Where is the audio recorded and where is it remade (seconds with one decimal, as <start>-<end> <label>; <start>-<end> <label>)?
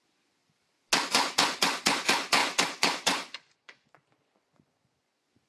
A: 0.0-0.4 remade; 0.4-1.1 recorded; 1.1-5.5 remade